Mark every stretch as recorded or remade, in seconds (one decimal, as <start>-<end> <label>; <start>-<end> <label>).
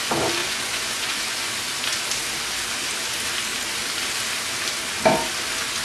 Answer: 0.0-0.4 recorded; 0.4-1.5 remade; 1.5-5.8 recorded